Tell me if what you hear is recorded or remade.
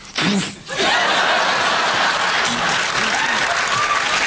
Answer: recorded